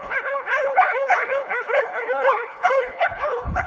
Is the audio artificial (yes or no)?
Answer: yes